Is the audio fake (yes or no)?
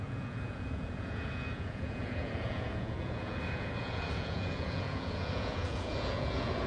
yes